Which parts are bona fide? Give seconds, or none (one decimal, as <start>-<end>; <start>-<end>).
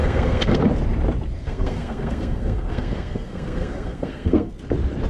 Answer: 0.6-1.4; 4.5-5.1